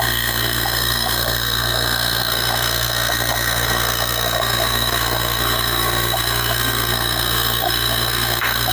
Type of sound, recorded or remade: remade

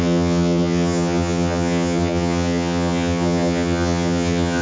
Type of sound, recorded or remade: remade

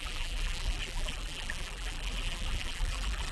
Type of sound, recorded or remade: remade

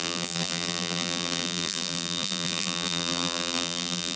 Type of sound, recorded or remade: remade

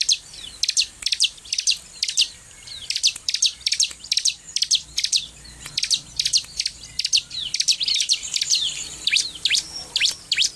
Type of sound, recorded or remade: remade